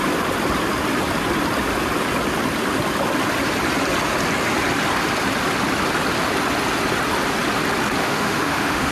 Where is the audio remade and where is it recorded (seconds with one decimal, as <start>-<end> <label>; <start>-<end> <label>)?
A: 0.0-8.0 recorded; 8.0-8.9 remade